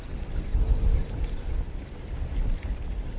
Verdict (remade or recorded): recorded